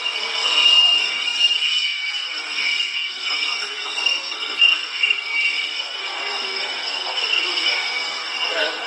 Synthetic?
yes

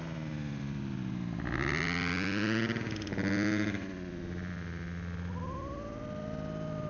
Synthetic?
no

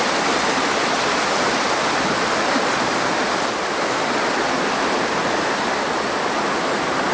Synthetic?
no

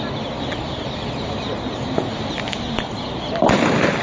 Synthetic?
no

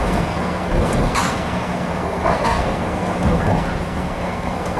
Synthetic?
yes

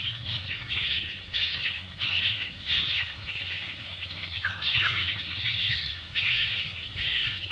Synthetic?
yes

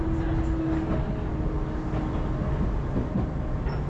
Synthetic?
no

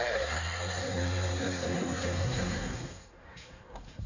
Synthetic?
yes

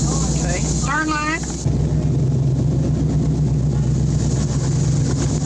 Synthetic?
no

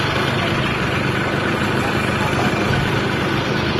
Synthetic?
no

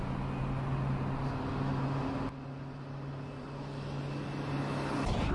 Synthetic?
no